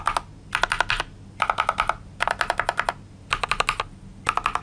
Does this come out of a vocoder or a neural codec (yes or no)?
no